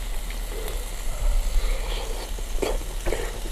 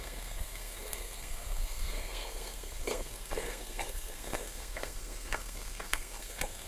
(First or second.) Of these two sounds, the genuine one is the first